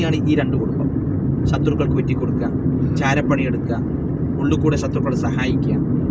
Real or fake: real